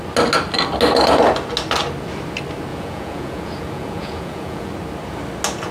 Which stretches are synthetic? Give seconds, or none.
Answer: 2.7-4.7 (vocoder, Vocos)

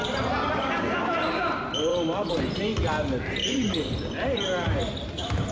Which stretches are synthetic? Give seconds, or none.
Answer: 1.9-2.4 (vocoder, BigVGAN v2); 3.4-4.8